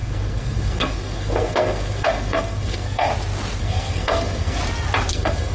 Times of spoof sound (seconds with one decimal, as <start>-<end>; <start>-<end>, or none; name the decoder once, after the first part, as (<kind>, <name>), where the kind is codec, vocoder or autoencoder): 0.0-3.1 (codec, SNAC); 3.6-4.6; 5.1-5.5